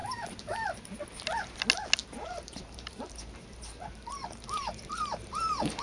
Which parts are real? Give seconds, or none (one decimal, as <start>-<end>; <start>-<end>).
0.9-2.0